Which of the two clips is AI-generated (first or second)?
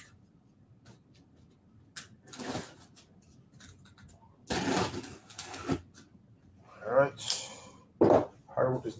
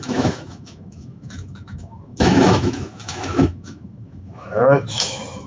second